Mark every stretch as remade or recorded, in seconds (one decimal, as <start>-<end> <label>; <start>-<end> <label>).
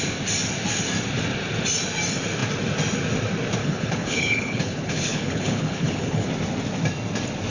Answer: 0.0-3.6 recorded; 3.6-6.3 remade; 6.3-7.5 recorded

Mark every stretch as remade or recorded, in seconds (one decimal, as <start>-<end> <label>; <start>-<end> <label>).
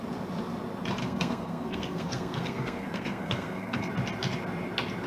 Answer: 0.0-1.0 recorded; 1.0-3.9 remade; 3.9-5.1 recorded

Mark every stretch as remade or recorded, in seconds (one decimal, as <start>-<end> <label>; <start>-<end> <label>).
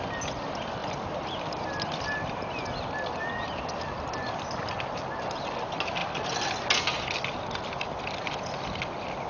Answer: 0.0-0.8 recorded; 0.8-2.6 remade; 2.6-3.4 recorded; 3.4-4.6 remade; 4.6-6.0 recorded; 6.0-6.6 remade; 6.6-9.3 recorded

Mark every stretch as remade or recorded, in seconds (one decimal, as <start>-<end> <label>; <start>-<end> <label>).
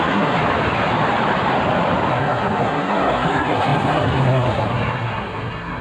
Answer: 0.0-0.4 remade; 0.4-2.1 recorded; 2.1-5.8 remade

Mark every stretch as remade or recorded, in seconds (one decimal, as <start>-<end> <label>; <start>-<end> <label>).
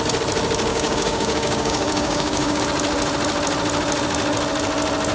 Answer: 0.0-0.7 recorded; 0.7-2.6 remade; 2.6-5.1 recorded